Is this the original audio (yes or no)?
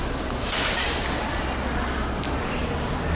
no